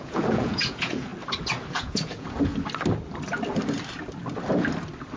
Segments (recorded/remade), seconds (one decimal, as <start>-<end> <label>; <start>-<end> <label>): 0.0-1.1 remade; 1.1-1.7 recorded; 1.7-2.5 remade; 2.5-5.2 recorded